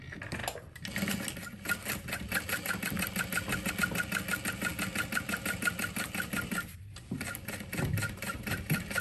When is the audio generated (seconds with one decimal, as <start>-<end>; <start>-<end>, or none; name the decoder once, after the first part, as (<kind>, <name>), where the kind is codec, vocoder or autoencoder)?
none